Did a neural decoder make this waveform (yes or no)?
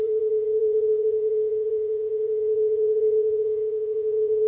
yes